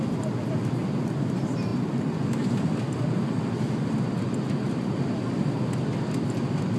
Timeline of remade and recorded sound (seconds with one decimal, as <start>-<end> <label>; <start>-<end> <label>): 0.0-6.8 recorded